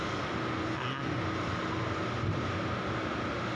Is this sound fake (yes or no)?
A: no